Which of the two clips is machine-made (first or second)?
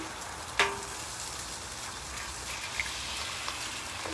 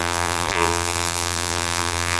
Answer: second